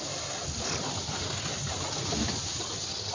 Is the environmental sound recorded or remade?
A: recorded